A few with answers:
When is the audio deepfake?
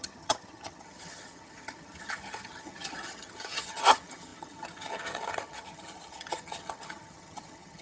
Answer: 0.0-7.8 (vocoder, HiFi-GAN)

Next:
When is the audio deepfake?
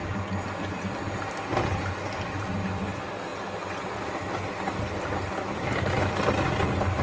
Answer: none